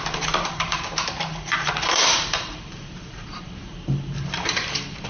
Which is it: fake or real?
fake